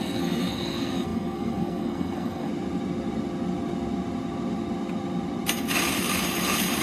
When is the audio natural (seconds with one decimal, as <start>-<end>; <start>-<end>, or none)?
2.5-6.8